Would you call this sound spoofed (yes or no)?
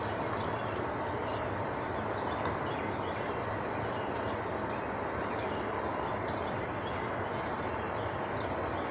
no